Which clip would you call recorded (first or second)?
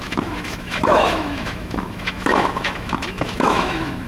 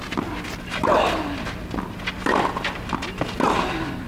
second